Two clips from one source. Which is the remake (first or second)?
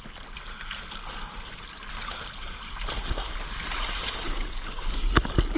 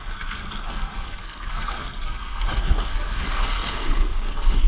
second